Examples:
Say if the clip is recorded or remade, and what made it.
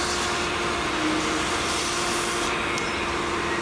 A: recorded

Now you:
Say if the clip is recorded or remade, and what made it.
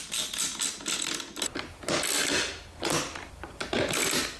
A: recorded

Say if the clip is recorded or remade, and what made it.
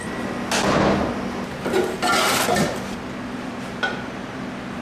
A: recorded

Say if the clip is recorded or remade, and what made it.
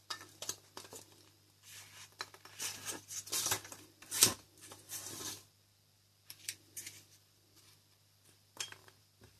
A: remade, vocoder, BigVGAN v2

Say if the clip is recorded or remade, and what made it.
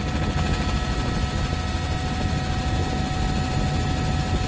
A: recorded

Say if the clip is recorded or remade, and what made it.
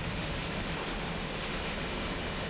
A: remade, autoencoder, DAC-VAE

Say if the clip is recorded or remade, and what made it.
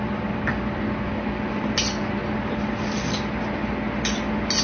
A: recorded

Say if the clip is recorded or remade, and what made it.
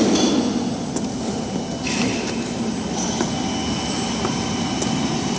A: recorded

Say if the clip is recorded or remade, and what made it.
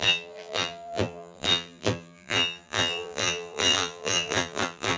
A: remade, vocoder, BigVGAN v2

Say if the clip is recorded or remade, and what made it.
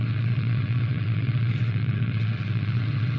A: remade, vocoder, WaveNeXt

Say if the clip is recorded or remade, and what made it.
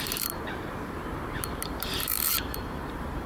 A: remade, vocoder, BigVGAN v2